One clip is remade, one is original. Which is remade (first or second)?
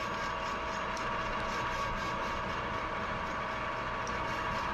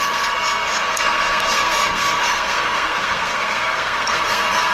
second